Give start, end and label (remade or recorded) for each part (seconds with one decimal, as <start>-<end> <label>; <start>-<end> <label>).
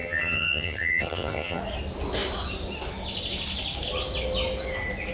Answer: 0.0-1.6 remade; 1.6-5.1 recorded